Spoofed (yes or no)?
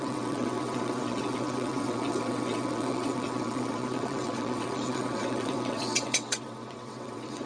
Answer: yes